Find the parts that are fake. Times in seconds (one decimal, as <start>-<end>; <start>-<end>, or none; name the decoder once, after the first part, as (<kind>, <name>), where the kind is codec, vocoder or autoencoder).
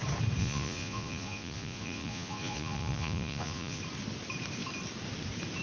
0.4-3.8 (vocoder, Vocos)